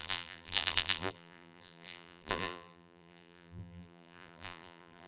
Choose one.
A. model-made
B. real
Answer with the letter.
A